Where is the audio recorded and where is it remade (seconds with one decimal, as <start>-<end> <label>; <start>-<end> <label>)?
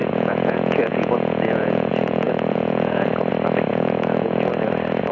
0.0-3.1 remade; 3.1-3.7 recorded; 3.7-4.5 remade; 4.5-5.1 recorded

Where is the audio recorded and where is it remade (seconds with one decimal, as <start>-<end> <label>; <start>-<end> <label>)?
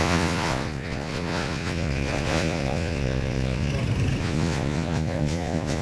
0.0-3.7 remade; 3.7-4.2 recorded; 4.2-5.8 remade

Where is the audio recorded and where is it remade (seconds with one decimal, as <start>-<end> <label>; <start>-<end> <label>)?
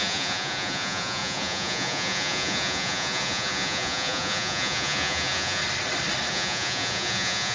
0.0-5.6 remade; 5.6-6.3 recorded; 6.3-7.5 remade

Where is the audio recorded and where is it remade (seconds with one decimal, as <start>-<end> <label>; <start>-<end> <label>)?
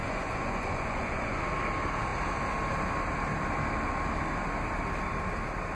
0.0-1.4 remade; 1.4-5.7 recorded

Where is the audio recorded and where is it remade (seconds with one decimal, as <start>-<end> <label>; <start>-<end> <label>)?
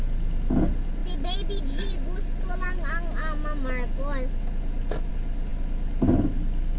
0.0-6.8 recorded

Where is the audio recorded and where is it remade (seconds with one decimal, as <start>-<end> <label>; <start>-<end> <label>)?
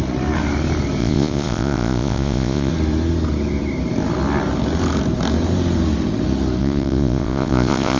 0.0-1.0 recorded; 1.0-2.7 remade; 2.7-6.6 recorded; 6.6-8.0 remade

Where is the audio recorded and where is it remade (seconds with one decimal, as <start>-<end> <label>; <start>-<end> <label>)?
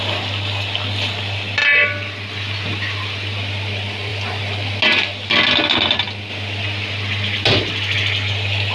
0.0-8.7 recorded